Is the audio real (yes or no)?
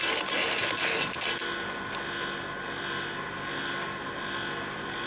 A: no